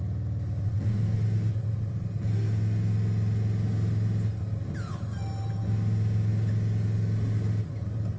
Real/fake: real